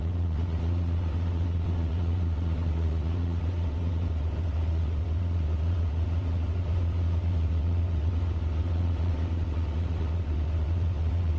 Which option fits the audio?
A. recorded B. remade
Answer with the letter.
B